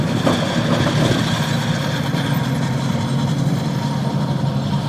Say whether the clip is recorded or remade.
recorded